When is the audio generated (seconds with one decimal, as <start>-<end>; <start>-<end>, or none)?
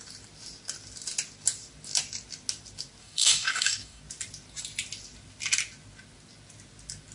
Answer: 3.0-4.0